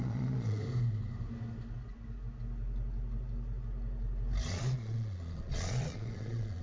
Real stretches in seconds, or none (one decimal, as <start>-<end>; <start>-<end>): 0.6-4.5

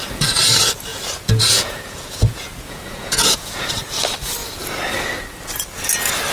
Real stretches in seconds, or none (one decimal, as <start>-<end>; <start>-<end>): 0.0-0.9; 3.7-6.3

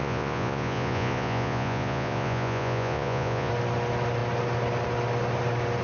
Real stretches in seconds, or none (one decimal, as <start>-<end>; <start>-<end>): 3.5-5.8